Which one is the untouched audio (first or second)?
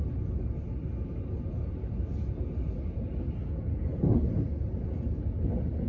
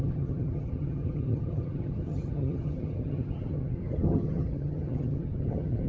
first